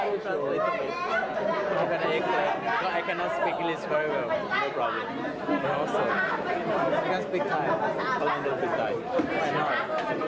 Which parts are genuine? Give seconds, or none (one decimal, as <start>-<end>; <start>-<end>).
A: 0.0-10.3

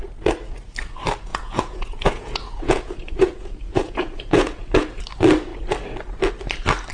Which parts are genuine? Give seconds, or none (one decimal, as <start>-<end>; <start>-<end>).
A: 0.0-1.3; 5.0-6.9

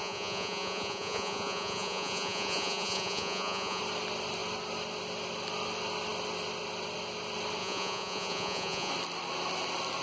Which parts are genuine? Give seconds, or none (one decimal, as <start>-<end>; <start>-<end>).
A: 3.8-7.6; 8.9-10.0

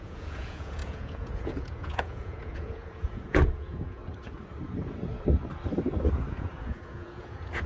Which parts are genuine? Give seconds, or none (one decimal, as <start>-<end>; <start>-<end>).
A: 4.0-6.3

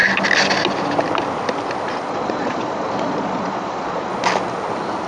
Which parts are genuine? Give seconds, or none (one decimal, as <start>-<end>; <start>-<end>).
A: 0.0-2.1; 4.1-5.1